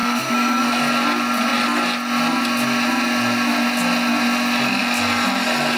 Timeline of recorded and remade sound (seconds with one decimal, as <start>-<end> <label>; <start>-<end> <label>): 0.0-0.8 remade; 0.8-5.8 recorded